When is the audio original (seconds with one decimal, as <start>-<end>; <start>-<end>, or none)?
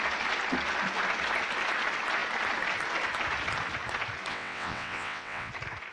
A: 0.0-4.3; 5.5-5.9